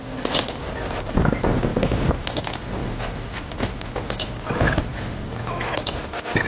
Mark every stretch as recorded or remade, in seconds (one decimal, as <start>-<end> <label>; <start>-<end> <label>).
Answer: 0.0-6.5 recorded